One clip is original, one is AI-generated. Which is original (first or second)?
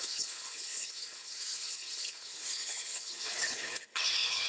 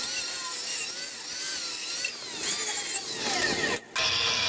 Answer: second